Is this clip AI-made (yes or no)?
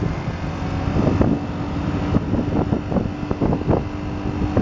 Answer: no